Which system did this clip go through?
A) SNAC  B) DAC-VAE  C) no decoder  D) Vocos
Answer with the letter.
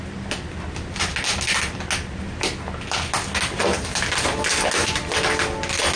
C